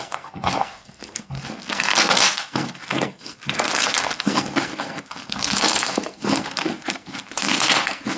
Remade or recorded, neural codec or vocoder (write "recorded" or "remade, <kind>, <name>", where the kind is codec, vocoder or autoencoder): remade, codec, SNAC